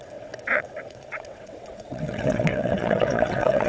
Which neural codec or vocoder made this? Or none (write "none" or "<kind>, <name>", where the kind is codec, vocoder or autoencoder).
vocoder, WaveNeXt